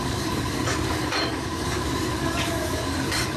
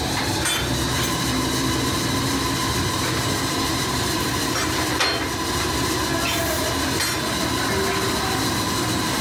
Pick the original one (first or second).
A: second